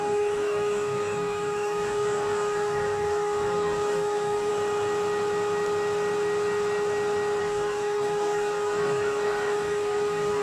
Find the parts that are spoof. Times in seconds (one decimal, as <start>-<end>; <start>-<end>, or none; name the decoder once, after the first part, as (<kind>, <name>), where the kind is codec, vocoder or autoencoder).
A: 0.0-4.5 (codec, DAC); 7.4-10.4